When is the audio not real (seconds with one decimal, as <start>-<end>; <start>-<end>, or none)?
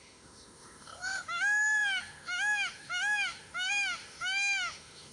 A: 0.0-5.1